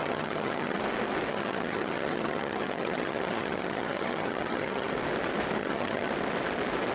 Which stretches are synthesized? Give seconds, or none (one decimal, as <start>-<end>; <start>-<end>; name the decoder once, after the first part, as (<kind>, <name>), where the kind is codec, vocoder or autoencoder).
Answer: 0.0-0.8 (vocoder, HiFi-GAN); 1.3-4.9; 5.6-6.1